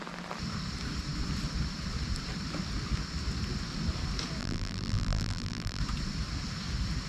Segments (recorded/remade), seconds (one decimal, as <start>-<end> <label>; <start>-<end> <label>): 0.0-4.4 recorded; 4.4-5.8 remade; 5.8-7.1 recorded